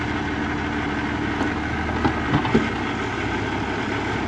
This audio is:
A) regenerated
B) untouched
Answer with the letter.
B